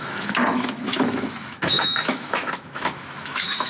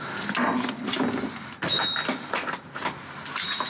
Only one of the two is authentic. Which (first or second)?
second